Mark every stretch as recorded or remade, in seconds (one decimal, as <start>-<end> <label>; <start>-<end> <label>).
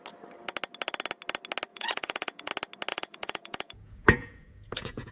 0.0-1.7 recorded; 1.7-2.5 remade; 2.5-2.9 recorded; 2.9-5.1 remade